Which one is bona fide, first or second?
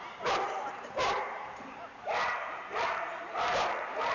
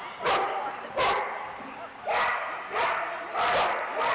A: second